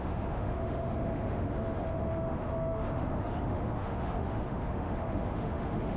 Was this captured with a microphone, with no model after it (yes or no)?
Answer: no